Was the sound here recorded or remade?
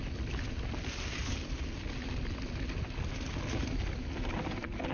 recorded